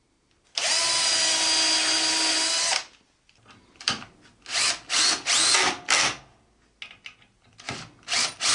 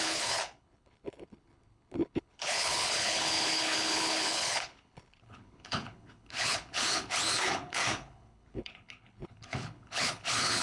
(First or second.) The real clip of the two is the first